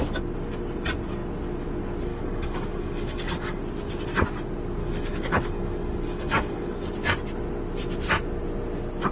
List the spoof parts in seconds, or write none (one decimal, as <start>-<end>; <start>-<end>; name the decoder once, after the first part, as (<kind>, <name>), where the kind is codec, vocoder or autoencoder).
2.1-3.6 (codec, DAC); 4.8-6.9